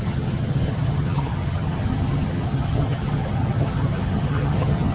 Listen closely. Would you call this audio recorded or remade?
remade